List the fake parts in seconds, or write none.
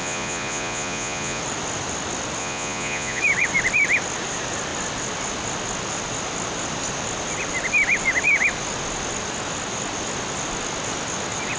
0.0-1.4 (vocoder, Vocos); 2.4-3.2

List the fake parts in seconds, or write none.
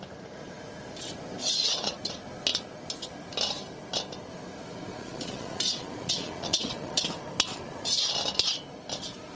1.4-2.1 (vocoder, Vocos); 4.9-7.0; 7.5-8.0